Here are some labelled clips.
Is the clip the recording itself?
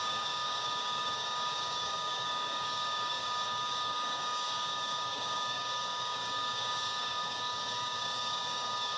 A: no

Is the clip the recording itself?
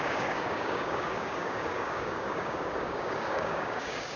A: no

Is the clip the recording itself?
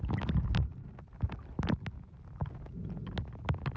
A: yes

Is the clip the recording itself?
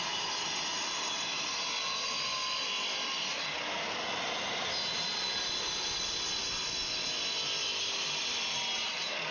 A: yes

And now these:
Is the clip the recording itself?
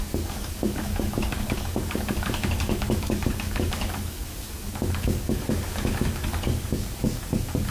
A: no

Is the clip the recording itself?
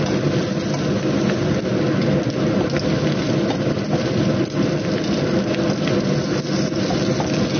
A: yes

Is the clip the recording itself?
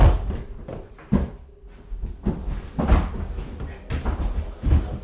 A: yes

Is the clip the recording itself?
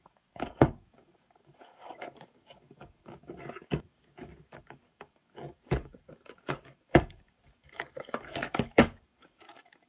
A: no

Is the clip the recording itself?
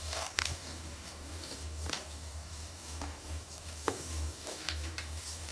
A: no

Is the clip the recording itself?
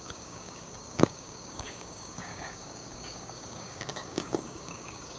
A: no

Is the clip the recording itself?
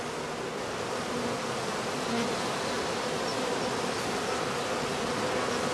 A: yes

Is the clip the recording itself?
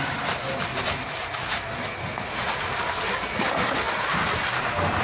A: yes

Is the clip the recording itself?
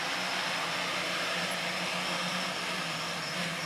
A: yes